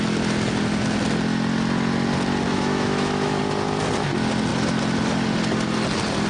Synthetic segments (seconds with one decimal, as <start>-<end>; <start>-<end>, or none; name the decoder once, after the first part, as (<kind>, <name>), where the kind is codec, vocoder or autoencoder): 2.5-3.4 (autoencoder, DAC-VAE)